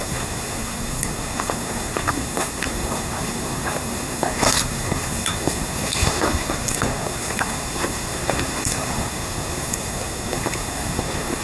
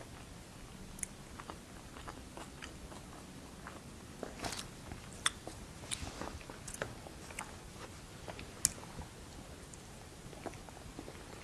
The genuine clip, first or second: second